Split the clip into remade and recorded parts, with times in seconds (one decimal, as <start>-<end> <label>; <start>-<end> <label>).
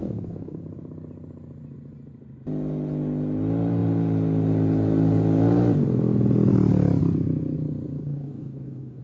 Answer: 0.0-0.6 remade; 0.6-8.0 recorded; 8.0-9.0 remade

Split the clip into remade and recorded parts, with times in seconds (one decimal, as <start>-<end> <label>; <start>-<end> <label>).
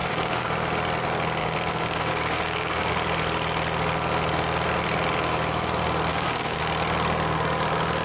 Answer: 0.0-0.5 remade; 0.5-1.4 recorded; 1.4-2.9 remade; 2.9-6.1 recorded; 6.1-6.6 remade; 6.6-8.0 recorded